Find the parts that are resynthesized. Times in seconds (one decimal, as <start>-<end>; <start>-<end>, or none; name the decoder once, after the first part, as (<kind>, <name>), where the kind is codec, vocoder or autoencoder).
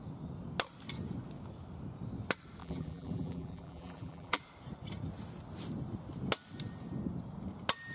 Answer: 2.6-4.4 (vocoder, BigVGAN v2)